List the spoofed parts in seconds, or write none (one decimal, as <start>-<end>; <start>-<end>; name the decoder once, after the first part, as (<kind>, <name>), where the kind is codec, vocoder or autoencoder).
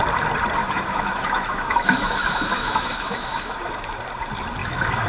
0.6-3.7 (autoencoder, DAC-VAE); 4.6-5.1